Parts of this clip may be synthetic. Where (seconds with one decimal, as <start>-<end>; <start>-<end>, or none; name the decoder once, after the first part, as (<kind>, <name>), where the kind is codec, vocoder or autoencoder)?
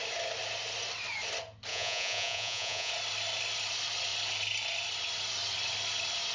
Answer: 1.7-2.9 (vocoder, Vocos)